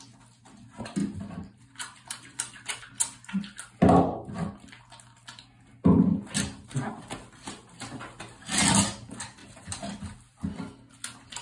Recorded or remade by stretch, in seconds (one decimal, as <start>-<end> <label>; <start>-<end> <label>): 0.0-1.0 recorded; 1.0-2.8 remade; 2.8-9.4 recorded; 9.4-10.4 remade; 10.4-11.4 recorded